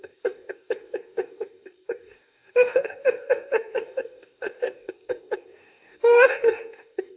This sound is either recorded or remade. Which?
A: remade